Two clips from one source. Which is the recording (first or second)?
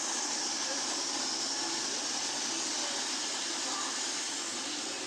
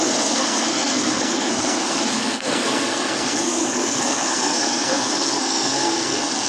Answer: first